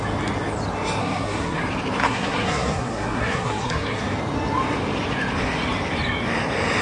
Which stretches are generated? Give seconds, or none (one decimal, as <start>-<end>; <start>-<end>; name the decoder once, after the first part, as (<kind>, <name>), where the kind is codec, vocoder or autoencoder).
1.0-1.6 (codec, SNAC); 2.0-4.0